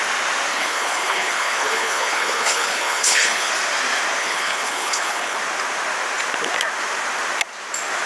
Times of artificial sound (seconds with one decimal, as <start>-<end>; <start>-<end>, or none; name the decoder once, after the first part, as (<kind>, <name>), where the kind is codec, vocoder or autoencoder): 0.5-3.5 (codec, HILCodec); 4.2-5.4